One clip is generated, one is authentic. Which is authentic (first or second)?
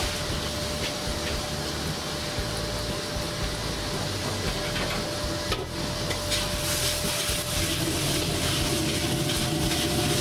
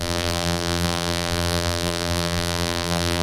first